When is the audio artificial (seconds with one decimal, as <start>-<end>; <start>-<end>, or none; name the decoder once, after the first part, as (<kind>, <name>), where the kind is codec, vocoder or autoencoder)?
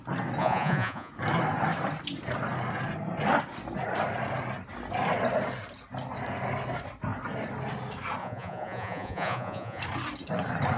0.4-1.1 (vocoder, Vocos); 8.2-9.8